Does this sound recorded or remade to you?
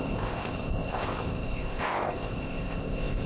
remade